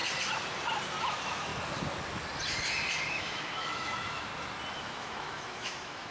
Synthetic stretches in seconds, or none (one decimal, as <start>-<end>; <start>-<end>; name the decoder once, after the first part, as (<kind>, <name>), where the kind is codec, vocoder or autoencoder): 1.0-1.5 (autoencoder, DAC-VAE); 3.1-4.3; 4.8-6.1